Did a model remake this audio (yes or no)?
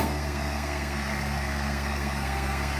yes